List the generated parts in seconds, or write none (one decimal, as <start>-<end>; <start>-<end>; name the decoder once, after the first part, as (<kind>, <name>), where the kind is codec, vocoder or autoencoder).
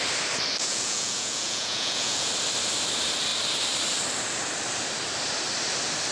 0.6-2.3 (vocoder, Vocos)